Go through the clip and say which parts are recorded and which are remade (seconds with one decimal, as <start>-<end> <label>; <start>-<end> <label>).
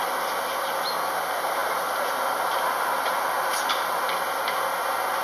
0.0-5.2 recorded